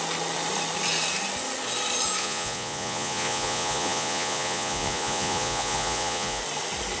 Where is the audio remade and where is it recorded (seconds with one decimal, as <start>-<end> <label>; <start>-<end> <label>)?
0.0-2.2 recorded; 2.2-6.4 remade; 6.4-7.0 recorded